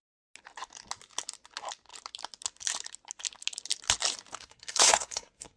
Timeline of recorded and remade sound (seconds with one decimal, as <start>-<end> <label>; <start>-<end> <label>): 0.0-4.4 recorded; 4.4-5.6 remade